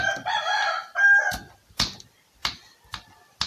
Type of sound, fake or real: real